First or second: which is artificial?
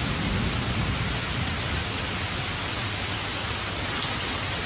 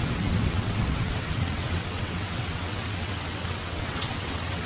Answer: second